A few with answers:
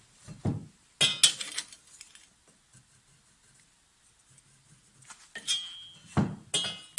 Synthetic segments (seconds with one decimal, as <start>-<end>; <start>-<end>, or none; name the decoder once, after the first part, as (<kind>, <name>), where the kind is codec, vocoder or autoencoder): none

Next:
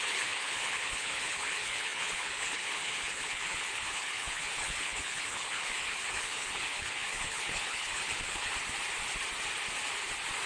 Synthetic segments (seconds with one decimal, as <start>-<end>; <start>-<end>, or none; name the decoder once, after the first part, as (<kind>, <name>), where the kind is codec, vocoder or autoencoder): 0.0-8.5 (codec, HILCodec)

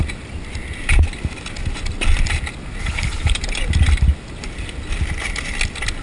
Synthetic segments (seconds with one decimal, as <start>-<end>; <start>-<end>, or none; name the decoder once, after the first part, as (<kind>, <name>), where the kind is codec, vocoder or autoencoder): 2.8-3.3 (codec, HILCodec)